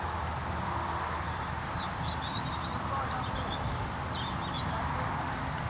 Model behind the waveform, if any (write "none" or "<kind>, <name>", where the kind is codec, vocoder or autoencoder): vocoder, BigVGAN v2